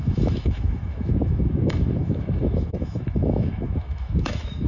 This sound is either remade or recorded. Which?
remade